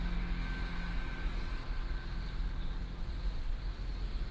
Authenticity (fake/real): real